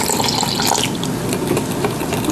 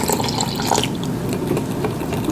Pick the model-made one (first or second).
second